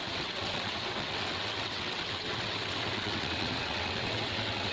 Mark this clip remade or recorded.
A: remade